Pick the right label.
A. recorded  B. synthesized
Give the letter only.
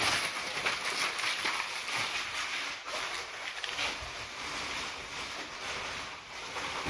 A